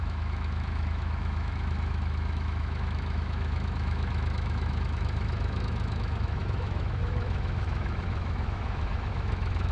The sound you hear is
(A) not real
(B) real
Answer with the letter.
A